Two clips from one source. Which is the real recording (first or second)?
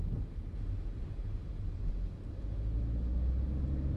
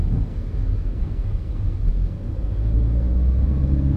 first